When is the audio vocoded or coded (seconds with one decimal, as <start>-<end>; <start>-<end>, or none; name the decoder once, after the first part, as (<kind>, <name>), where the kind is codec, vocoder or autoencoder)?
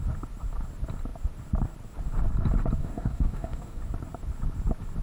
2.8-3.8 (codec, DAC)